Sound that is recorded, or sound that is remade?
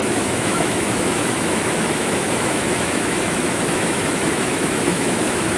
remade